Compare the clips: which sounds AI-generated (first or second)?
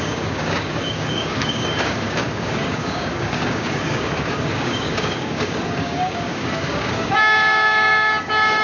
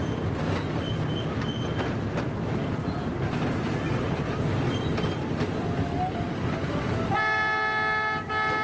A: first